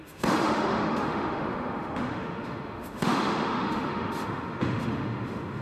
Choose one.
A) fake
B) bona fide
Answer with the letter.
A